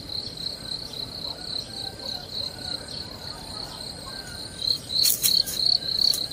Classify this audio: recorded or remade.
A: recorded